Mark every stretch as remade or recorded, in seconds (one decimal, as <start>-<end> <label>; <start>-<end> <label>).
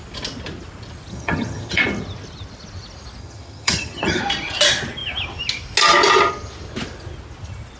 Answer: 0.0-1.1 recorded; 1.1-1.8 remade; 1.8-3.2 recorded; 3.2-4.2 remade; 4.2-7.8 recorded